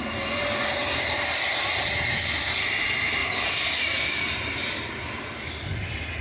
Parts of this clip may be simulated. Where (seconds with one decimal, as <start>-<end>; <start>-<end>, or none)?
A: 3.2-4.3